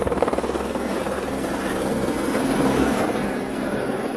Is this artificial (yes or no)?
yes